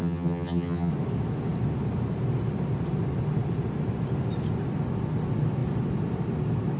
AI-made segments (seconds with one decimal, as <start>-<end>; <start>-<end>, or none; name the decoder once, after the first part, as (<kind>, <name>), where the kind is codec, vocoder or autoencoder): 0.0-0.9 (vocoder, HiFi-GAN)